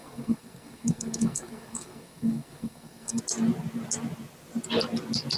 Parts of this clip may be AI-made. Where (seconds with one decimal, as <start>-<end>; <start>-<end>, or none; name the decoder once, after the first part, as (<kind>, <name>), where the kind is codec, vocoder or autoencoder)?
0.0-3.2 (codec, SNAC)